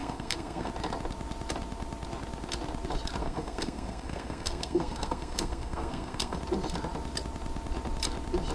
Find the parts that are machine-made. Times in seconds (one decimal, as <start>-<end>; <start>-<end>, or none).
0.0-0.7; 3.2-6.4